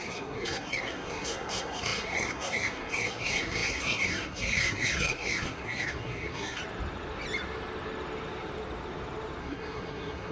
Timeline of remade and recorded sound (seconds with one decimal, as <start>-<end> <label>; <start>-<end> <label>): 0.0-6.6 remade; 6.6-9.4 recorded; 9.4-10.3 remade